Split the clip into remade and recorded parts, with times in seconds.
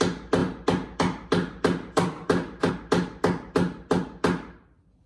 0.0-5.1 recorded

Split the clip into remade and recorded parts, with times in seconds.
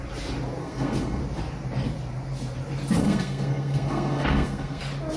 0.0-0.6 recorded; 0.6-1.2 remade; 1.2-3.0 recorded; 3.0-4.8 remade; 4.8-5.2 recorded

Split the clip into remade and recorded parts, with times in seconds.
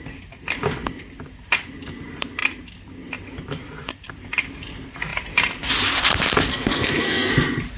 0.0-6.5 recorded; 6.5-7.3 remade; 7.3-7.8 recorded